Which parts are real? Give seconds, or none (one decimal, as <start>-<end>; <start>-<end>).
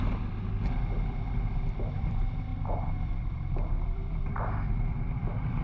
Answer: none